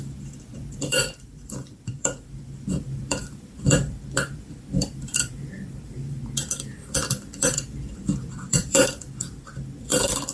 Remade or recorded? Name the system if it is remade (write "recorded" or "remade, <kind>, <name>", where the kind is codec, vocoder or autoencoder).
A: remade, vocoder, BigVGAN v2